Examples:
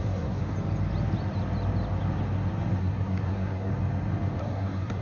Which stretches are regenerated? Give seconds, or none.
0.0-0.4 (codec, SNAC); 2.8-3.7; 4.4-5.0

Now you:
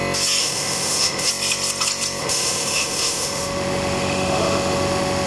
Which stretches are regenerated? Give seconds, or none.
0.4-1.3 (autoencoder, DAC-VAE); 2.2-5.3

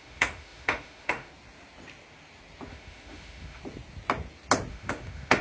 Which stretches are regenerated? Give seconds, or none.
0.0-1.3 (autoencoder, DAC-VAE); 2.7-3.6; 4.7-5.4

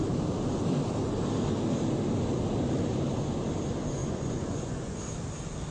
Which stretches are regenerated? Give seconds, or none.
4.0-5.0 (vocoder, Vocos)

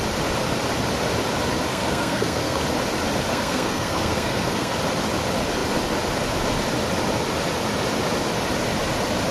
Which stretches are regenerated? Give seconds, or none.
1.7-2.6 (codec, SNAC); 3.3-4.7